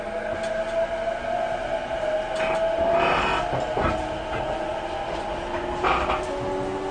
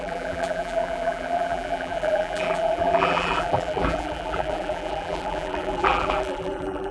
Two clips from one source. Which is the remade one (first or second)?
second